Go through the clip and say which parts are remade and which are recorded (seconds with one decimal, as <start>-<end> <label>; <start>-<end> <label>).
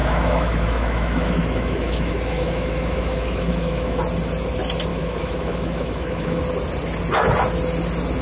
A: 0.0-4.0 remade; 4.0-4.9 recorded; 4.9-6.4 remade; 6.4-8.2 recorded